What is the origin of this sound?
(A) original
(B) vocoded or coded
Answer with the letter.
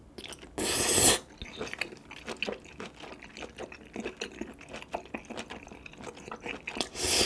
A